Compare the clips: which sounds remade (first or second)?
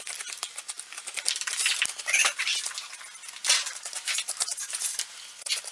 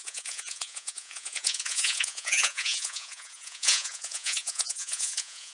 second